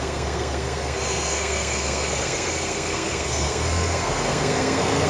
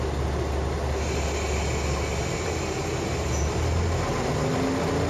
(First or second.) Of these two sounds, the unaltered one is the second